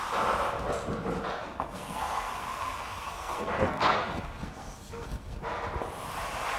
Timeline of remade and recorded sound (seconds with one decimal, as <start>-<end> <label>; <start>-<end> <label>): 0.0-1.4 recorded; 1.4-5.4 remade; 5.4-6.6 recorded